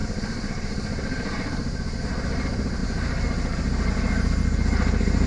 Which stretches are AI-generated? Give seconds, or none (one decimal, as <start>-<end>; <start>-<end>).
0.0-2.0; 2.8-3.9